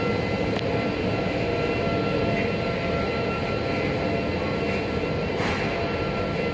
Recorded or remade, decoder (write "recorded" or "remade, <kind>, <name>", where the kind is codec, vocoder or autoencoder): recorded